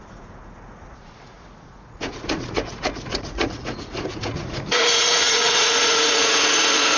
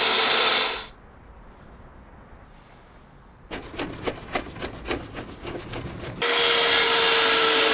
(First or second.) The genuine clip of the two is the second